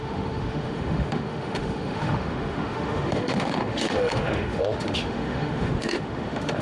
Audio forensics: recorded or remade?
remade